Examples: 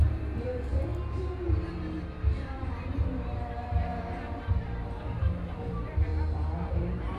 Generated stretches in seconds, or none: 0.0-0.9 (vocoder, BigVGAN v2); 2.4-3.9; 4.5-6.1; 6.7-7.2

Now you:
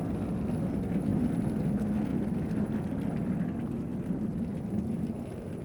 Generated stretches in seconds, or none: 1.1-1.6 (vocoder, BigVGAN v2); 2.1-3.4